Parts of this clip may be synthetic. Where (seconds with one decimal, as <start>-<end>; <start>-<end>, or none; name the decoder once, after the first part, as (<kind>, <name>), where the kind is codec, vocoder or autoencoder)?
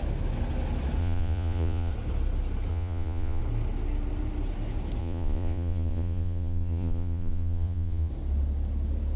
1.0-1.9 (vocoder, Vocos); 2.7-3.4; 5.0-8.1